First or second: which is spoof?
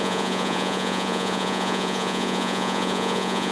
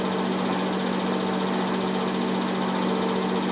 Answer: first